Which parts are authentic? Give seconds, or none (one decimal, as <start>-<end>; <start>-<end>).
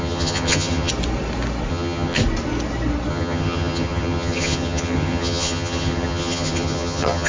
0.9-1.7; 2.2-3.1